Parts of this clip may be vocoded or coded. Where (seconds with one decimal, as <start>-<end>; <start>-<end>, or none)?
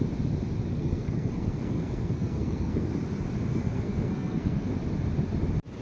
0.7-2.9; 3.5-4.7